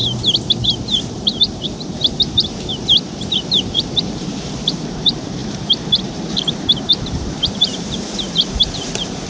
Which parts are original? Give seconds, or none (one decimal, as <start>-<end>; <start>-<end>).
0.0-1.1; 2.7-3.2